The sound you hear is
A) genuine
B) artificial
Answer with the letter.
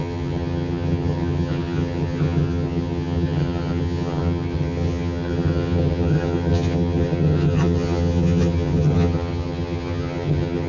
B